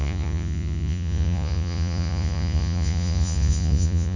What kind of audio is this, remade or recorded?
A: remade